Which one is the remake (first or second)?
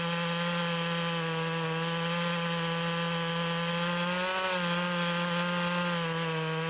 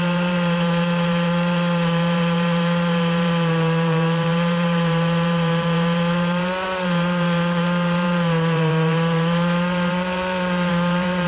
second